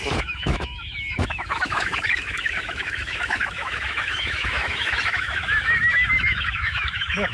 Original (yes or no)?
no